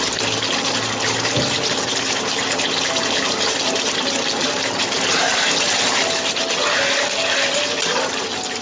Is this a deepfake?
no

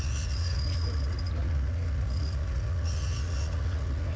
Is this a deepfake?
yes